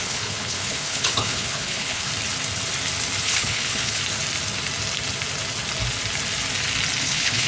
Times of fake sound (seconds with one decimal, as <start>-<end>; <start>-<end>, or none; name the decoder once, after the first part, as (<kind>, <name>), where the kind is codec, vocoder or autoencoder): 0.0-2.1 (codec, HILCodec); 3.2-4.0; 7.0-7.5